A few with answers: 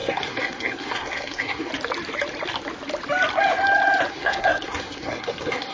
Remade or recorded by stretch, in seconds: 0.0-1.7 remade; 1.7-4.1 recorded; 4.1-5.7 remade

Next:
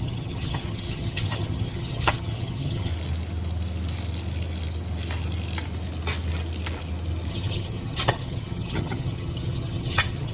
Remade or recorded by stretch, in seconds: 0.0-2.9 remade; 2.9-7.3 recorded; 7.3-10.3 remade

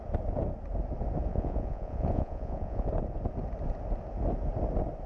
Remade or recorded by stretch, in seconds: 0.0-1.3 recorded; 1.3-2.9 remade; 2.9-5.1 recorded

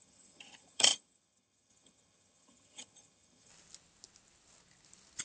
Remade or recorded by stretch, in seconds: 0.0-3.5 remade; 3.5-5.2 recorded

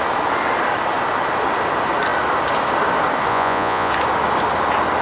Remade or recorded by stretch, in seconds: 0.0-3.3 recorded; 3.3-3.9 remade; 3.9-5.0 recorded